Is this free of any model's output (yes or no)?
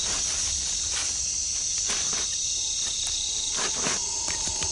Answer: yes